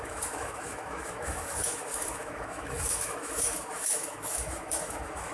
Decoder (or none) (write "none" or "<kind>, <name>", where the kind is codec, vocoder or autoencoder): autoencoder, DAC-VAE